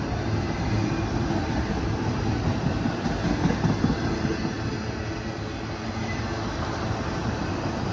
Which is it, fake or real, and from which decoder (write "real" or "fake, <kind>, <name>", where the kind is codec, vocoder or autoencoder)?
real